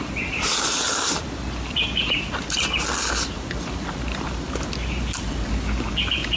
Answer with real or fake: real